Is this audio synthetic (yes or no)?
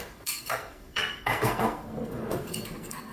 yes